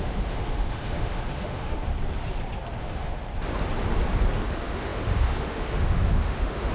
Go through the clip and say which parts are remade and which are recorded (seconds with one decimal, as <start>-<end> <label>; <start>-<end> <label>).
0.0-1.9 remade; 1.9-2.8 recorded; 2.8-3.2 remade; 3.2-4.5 recorded; 4.5-6.7 remade